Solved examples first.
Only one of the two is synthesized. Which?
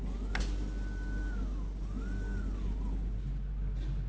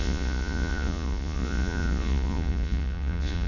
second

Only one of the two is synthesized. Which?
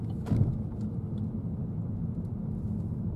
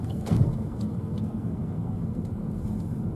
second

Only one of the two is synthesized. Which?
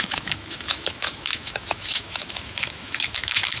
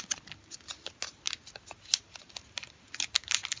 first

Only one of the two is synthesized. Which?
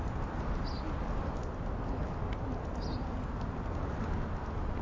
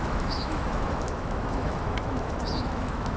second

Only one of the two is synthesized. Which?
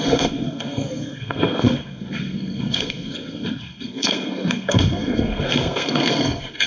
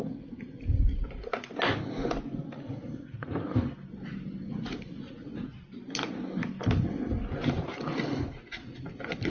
first